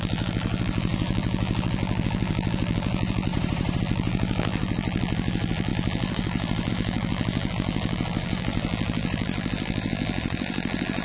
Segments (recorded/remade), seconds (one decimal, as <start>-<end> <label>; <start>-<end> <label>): 0.0-3.3 remade; 3.3-3.8 recorded; 3.8-11.0 remade